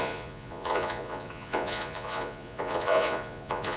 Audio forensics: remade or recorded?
remade